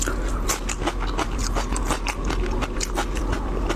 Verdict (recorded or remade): recorded